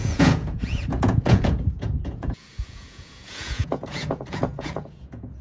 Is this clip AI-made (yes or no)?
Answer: yes